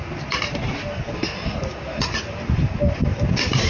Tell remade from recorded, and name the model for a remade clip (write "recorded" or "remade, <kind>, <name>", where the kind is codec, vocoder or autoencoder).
recorded